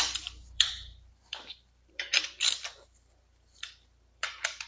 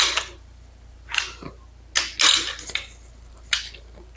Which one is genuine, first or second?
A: second